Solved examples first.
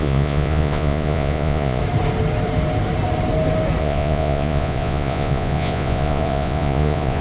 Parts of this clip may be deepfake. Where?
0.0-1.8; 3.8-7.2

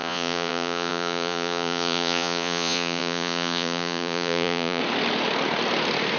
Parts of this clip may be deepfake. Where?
0.0-4.8

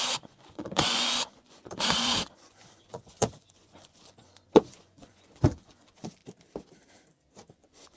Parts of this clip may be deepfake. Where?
0.0-6.2; 7.5-8.0

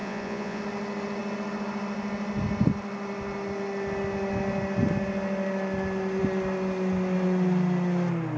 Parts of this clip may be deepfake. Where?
0.0-0.6

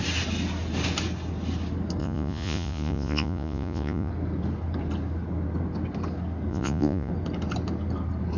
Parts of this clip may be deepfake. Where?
2.0-4.1; 6.5-7.1